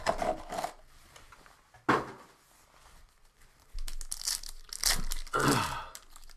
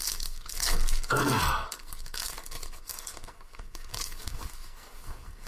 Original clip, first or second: first